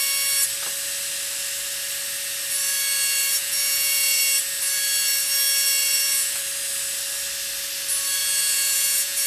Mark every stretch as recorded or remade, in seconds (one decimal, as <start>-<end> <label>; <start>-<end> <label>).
0.0-3.3 recorded; 3.3-4.2 remade; 4.2-5.8 recorded; 5.8-6.4 remade; 6.4-8.2 recorded; 8.2-9.3 remade